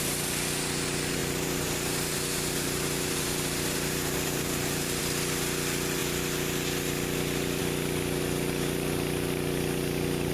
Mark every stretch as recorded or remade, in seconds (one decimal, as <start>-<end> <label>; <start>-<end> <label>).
0.0-1.2 recorded; 1.2-5.0 remade; 5.0-10.3 recorded